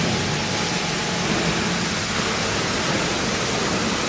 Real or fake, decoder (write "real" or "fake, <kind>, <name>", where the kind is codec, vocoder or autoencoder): real